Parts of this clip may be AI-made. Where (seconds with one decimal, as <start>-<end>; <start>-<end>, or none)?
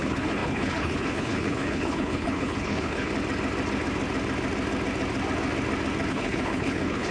0.0-3.1; 6.1-7.1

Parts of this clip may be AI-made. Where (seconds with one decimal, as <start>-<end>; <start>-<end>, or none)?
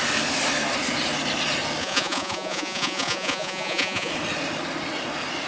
1.8-4.1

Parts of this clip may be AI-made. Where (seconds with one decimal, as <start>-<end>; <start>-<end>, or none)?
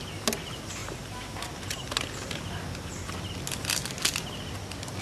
none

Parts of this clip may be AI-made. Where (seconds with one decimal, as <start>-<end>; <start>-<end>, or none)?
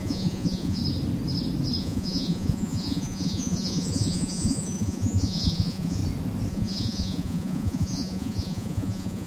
0.0-0.8; 1.8-6.0; 6.5-9.3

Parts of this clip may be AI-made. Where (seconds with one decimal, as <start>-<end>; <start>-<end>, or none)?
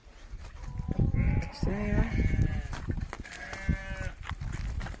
none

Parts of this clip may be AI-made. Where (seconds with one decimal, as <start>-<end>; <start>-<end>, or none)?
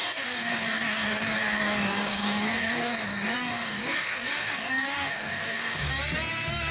0.0-5.9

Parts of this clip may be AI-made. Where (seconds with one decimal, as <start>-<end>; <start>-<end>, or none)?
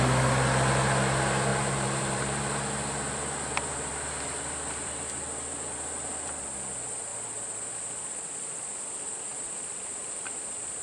1.5-2.4; 9.3-10.8